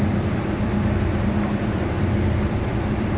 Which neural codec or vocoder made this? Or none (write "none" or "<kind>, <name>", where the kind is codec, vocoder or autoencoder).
vocoder, BigVGAN v2